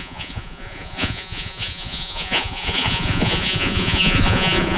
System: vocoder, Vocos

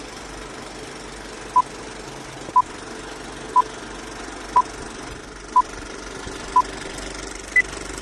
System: none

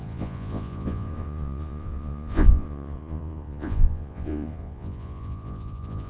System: vocoder, Vocos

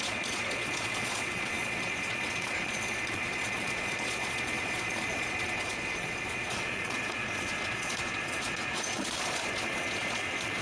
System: vocoder, Vocos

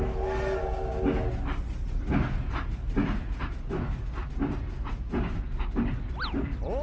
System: none